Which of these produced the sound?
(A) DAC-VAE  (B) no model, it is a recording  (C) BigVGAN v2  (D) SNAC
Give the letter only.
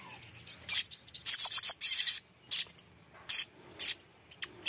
B